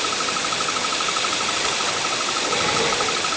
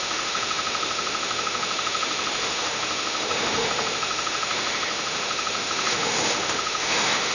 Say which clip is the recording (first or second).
first